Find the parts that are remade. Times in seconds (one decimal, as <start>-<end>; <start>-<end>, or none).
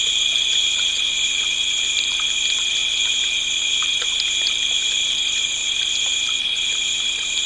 0.0-7.5